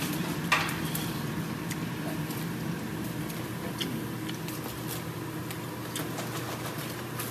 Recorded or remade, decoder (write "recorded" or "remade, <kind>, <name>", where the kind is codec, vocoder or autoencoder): recorded